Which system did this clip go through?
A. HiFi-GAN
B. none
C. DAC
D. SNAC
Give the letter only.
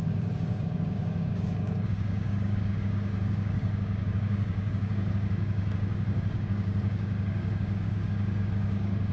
C